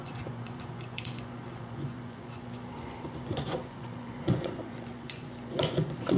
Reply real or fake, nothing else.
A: fake